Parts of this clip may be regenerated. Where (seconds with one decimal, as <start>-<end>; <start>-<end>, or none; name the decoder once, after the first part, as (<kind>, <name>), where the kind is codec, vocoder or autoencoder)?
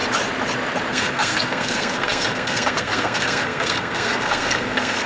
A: 0.9-5.1 (codec, SNAC)